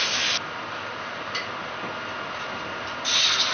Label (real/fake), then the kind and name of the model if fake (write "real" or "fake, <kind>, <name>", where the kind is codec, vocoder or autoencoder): real